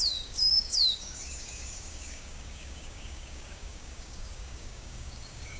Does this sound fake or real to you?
fake